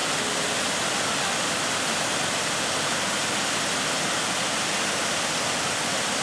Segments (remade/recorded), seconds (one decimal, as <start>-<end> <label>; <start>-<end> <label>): 0.0-6.2 recorded